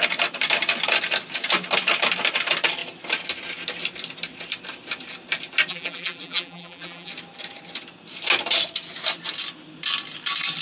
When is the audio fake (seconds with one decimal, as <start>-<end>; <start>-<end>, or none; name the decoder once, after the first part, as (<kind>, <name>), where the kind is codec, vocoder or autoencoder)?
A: 5.7-7.1 (vocoder, BigVGAN v2)